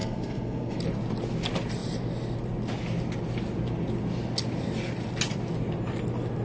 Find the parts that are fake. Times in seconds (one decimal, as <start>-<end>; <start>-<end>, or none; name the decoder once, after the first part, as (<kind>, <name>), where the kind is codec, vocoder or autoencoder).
0.0-0.8 (codec, SNAC)